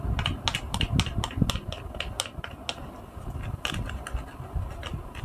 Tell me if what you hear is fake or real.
real